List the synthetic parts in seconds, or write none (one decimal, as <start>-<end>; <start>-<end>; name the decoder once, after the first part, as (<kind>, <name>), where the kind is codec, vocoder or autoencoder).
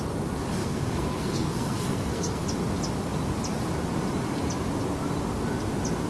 0.6-2.4 (codec, SNAC)